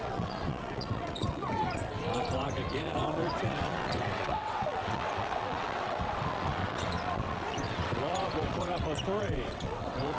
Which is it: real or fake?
fake